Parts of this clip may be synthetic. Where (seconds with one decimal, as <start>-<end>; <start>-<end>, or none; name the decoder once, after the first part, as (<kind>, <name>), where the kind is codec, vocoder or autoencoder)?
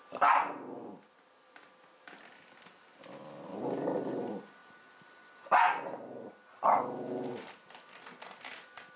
none